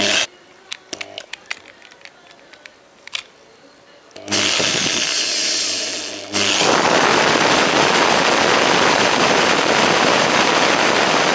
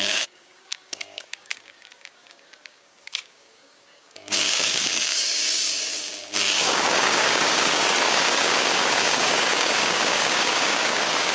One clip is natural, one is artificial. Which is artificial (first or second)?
second